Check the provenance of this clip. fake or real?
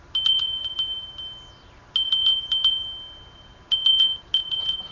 real